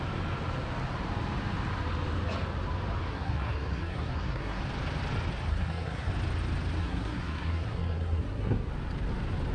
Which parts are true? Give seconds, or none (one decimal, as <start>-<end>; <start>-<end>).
0.0-3.1; 4.6-5.5; 6.1-6.8; 8.7-9.5